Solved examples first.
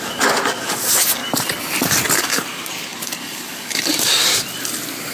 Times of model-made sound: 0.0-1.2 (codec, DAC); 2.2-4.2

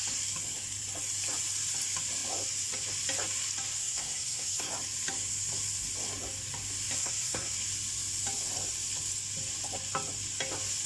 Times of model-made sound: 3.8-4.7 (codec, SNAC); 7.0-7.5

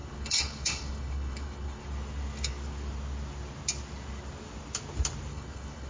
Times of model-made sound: 0.0-1.8 (codec, HILCodec); 5.3-5.9

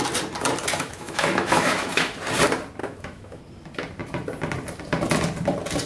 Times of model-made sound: 0.7-2.2 (autoencoder, DAC-VAE); 2.8-3.4